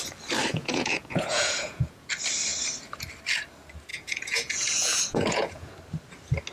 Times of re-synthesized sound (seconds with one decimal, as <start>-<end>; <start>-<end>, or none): 0.5-2.1; 3.9-5.7